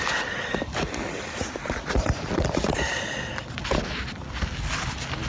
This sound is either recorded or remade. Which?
recorded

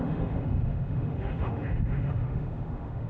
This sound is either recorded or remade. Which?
remade